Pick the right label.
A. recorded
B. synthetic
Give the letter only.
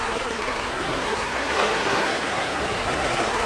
B